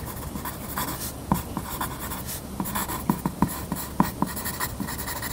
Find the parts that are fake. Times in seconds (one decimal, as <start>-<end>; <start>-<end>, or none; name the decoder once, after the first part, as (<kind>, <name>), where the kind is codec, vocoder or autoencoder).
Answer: none